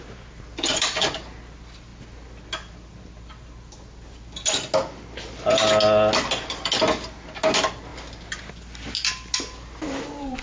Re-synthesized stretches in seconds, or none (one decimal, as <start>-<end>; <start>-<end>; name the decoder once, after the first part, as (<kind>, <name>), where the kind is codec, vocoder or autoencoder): none